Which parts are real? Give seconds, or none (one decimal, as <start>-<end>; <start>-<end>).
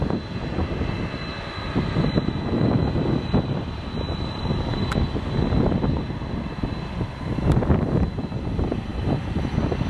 0.0-8.9; 9.4-9.9